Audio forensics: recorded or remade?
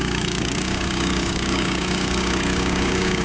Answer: remade